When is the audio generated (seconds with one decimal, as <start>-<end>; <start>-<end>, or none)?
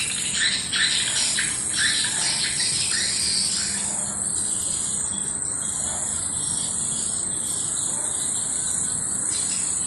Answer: 6.1-7.1